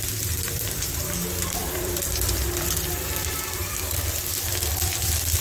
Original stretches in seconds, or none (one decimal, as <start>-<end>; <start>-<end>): none